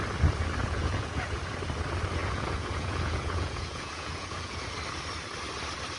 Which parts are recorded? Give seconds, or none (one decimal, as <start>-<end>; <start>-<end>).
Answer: 0.0-0.6; 1.4-2.2; 4.7-6.0